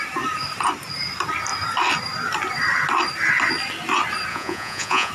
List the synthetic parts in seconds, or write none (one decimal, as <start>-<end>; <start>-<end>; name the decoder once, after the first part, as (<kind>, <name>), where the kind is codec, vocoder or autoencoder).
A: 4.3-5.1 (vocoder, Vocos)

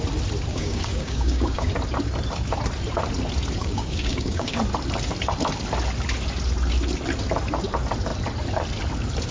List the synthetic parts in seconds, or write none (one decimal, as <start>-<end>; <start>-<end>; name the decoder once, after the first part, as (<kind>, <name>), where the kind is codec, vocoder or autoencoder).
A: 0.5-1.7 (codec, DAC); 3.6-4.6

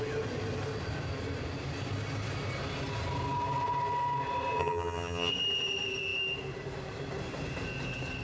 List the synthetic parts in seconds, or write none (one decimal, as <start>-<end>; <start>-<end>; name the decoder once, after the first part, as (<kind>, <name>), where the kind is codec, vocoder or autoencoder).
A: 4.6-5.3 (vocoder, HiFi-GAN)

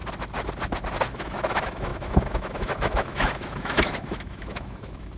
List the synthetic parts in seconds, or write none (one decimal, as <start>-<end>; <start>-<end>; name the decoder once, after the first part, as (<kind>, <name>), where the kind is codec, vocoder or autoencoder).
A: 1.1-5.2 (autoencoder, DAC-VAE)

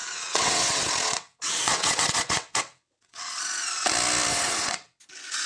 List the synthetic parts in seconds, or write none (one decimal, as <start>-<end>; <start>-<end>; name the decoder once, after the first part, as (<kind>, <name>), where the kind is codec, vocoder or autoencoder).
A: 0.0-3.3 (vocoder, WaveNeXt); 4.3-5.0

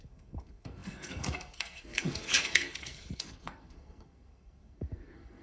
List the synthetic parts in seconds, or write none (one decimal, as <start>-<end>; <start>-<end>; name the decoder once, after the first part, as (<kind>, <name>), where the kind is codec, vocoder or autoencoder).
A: 0.0-5.4 (codec, SNAC)